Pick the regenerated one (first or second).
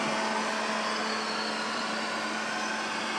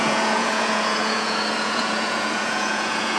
second